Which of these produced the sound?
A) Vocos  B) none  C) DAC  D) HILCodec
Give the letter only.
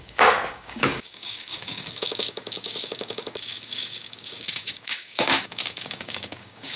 C